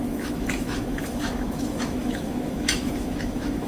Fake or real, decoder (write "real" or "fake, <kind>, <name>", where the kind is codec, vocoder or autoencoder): fake, autoencoder, DAC-VAE